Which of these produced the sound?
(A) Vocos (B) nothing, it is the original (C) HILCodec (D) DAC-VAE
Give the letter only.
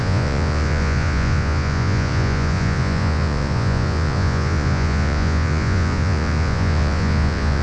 A